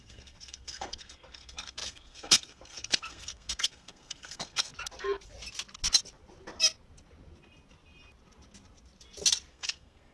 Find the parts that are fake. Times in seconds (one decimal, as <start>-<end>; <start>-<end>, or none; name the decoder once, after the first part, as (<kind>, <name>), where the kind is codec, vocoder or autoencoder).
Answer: 0.0-4.7 (codec, SNAC); 9.5-10.1

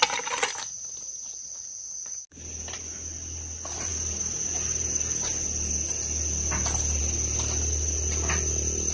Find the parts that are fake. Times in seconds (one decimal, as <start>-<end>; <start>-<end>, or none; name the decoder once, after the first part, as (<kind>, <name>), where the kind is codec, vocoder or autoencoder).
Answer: none